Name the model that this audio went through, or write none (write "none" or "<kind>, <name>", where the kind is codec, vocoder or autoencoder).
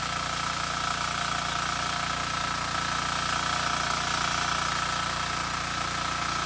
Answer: none